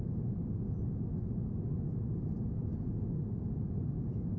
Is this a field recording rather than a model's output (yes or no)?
yes